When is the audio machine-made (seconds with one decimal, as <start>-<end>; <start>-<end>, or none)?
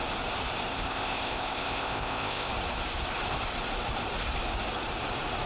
0.7-2.5